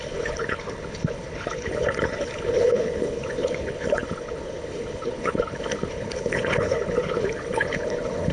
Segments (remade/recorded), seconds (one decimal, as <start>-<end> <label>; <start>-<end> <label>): 0.0-8.3 remade